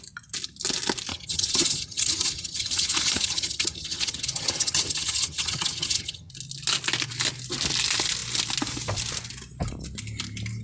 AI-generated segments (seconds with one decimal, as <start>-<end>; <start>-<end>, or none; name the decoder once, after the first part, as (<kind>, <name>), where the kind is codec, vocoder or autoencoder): 1.1-6.3 (vocoder, HiFi-GAN)